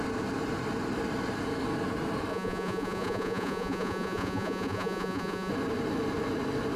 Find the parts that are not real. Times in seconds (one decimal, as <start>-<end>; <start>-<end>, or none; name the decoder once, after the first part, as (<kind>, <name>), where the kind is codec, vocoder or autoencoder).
2.3-5.5 (vocoder, Vocos)